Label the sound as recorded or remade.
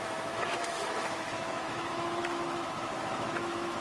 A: remade